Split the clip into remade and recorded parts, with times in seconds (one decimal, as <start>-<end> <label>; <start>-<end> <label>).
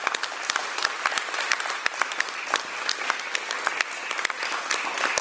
0.0-5.2 recorded